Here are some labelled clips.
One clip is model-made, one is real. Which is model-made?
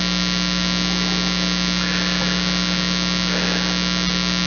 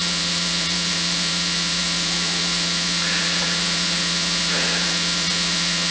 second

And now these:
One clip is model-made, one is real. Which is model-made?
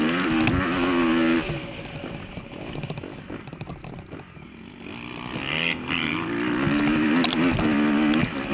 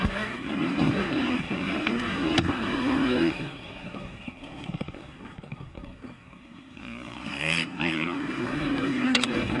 second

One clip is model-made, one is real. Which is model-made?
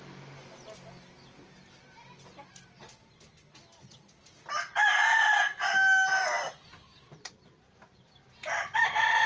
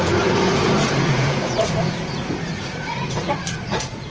second